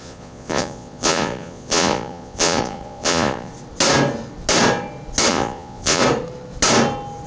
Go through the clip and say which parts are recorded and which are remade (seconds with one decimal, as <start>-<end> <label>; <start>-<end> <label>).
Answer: 0.0-3.5 remade; 3.5-5.3 recorded; 5.3-6.0 remade; 6.0-7.3 recorded